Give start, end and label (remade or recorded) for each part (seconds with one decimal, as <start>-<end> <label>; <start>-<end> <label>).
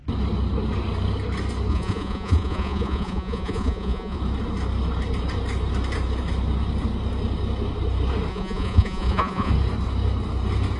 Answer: 0.0-1.7 recorded; 1.7-4.2 remade; 4.2-8.3 recorded; 8.3-9.5 remade; 9.5-10.8 recorded